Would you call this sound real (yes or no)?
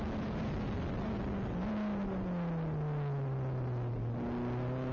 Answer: yes